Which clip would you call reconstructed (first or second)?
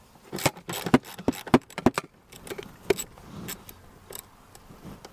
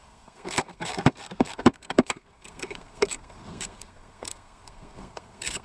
second